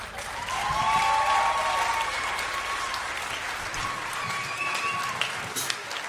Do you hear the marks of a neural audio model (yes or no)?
no